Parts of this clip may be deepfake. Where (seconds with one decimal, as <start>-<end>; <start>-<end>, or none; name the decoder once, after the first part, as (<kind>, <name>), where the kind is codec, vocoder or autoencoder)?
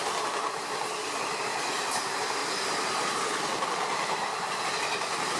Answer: 2.4-4.6 (vocoder, BigVGAN v2)